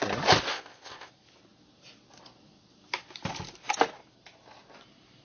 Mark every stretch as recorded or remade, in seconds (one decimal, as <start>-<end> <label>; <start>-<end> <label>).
0.0-0.5 recorded; 0.5-1.1 remade; 1.1-5.2 recorded